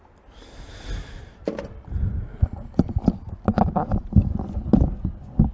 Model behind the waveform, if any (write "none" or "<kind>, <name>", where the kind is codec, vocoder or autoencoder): none